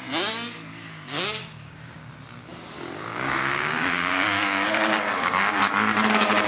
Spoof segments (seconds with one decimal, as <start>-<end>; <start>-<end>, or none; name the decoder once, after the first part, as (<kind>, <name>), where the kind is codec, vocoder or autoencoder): 0.7-2.1 (codec, DAC); 2.5-5.6